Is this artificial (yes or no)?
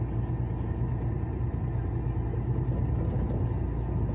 no